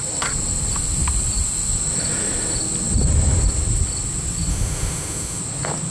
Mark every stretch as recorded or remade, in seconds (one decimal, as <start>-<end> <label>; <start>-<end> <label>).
0.0-4.5 recorded; 4.5-5.4 remade; 5.4-5.9 recorded